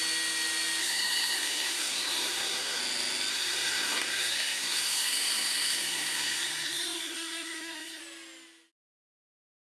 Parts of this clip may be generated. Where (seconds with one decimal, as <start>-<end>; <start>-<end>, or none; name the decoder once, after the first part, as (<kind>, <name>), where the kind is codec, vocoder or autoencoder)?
0.8-2.8 (codec, SNAC); 3.3-8.0